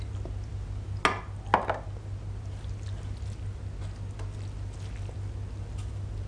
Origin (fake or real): real